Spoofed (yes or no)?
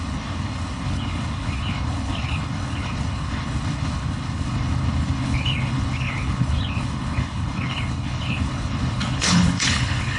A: yes